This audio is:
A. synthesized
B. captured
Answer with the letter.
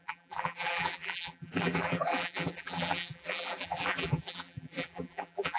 A